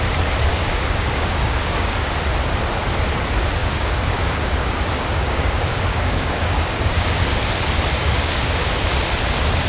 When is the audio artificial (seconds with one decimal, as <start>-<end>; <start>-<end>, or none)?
0.5-2.1; 3.6-7.4; 8.0-8.6